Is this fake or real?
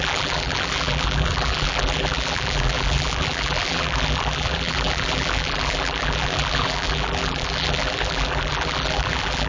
fake